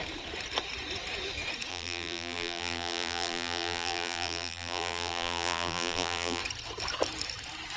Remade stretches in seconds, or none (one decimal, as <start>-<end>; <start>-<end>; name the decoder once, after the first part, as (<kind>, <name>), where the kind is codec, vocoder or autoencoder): 1.7-6.4 (vocoder, BigVGAN v2)